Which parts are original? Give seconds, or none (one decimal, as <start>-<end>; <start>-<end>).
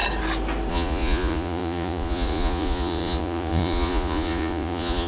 0.0-0.7